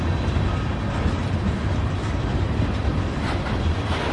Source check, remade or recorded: remade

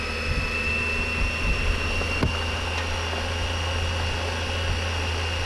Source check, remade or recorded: recorded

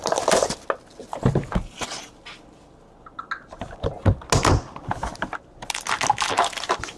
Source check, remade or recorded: recorded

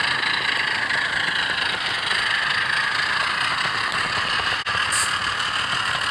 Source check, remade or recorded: recorded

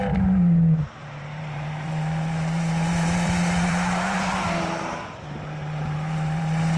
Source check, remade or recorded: remade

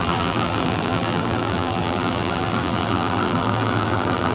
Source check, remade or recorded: remade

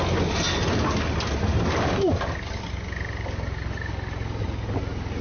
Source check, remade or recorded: recorded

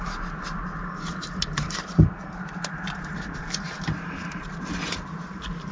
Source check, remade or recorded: remade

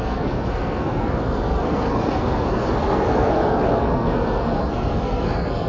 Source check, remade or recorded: remade